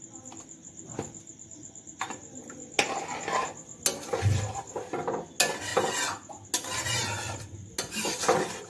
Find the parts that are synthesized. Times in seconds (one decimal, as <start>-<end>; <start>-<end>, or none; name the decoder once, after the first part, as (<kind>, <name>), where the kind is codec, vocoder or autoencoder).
none